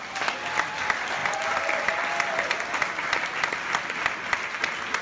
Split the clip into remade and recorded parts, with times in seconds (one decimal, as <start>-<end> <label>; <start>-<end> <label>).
0.0-5.0 recorded